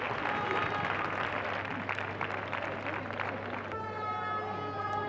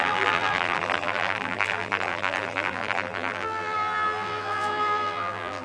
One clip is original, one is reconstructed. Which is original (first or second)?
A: first